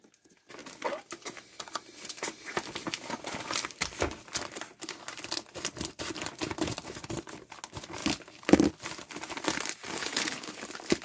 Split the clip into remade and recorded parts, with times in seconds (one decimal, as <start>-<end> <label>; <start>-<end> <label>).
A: 0.0-10.0 recorded; 10.0-10.6 remade; 10.6-11.0 recorded